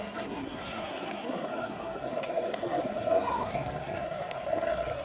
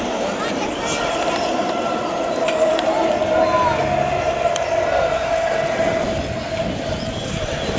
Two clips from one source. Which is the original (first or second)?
second